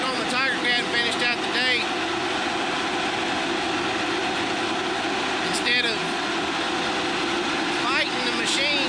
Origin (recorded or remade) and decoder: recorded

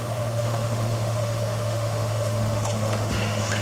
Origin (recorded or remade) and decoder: remade, autoencoder, DAC-VAE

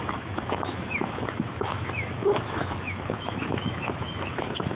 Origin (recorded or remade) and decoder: remade, autoencoder, DAC-VAE